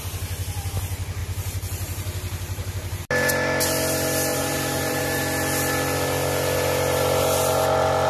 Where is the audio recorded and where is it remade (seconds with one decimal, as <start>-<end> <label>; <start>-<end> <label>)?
0.0-1.2 recorded; 1.2-3.0 remade; 3.0-4.3 recorded; 4.3-5.2 remade; 5.2-8.1 recorded